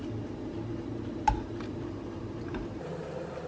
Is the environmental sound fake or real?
real